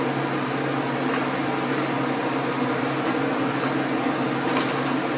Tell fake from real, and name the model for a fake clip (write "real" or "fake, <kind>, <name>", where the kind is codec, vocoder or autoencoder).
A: real